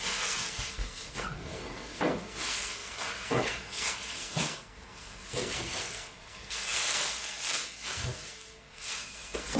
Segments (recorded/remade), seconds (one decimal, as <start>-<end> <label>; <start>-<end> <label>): 0.0-9.6 remade